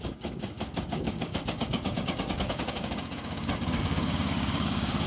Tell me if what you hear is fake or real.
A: fake